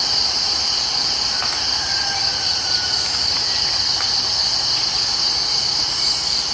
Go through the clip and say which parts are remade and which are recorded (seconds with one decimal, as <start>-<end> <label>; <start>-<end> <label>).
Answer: 0.0-2.3 recorded; 2.3-2.9 remade; 2.9-6.5 recorded